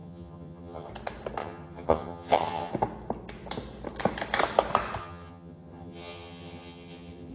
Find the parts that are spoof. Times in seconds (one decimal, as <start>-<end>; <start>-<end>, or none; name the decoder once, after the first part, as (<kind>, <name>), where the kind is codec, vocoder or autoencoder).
0.0-0.9 (vocoder, HiFi-GAN); 1.4-2.7; 5.0-7.3